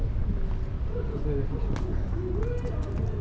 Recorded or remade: recorded